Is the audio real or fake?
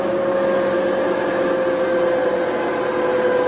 real